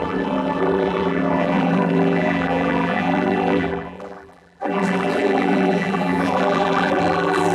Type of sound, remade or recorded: remade